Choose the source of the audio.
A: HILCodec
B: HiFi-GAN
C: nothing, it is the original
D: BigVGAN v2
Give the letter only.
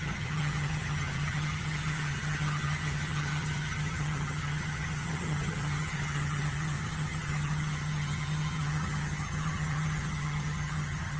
B